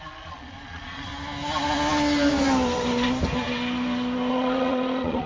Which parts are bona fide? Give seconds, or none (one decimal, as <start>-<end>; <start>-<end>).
1.1-4.3